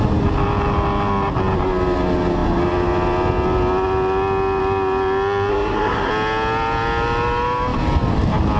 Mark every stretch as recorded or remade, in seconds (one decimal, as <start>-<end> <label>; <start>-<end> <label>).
0.0-5.5 recorded; 5.5-6.1 remade; 6.1-8.6 recorded